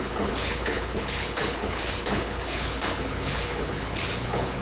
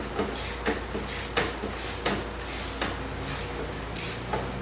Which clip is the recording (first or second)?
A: second